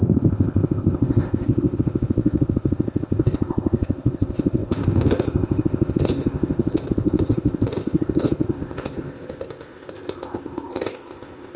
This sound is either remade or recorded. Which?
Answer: remade